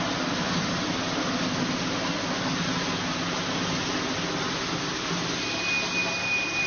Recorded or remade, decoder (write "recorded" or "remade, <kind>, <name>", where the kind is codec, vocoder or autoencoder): recorded